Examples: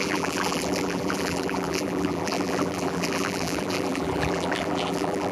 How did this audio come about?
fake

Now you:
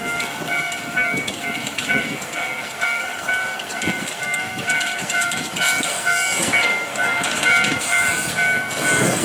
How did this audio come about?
fake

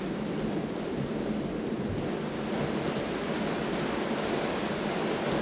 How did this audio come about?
real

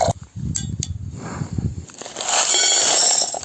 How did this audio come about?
real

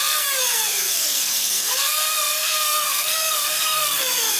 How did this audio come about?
fake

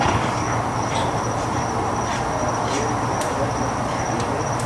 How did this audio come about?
real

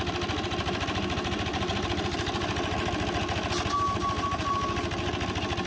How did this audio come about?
real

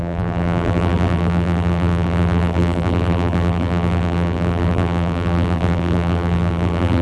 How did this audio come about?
fake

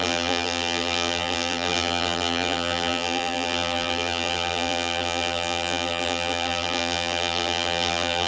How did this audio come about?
fake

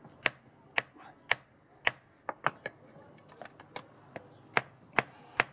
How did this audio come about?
real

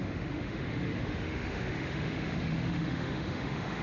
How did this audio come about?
fake